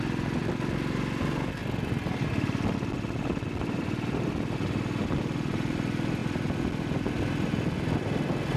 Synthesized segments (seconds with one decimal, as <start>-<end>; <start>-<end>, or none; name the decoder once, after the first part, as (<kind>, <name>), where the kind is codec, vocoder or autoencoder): none